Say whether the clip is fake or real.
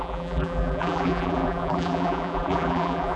fake